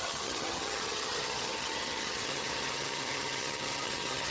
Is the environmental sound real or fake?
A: fake